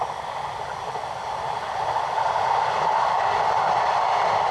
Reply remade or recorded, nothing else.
recorded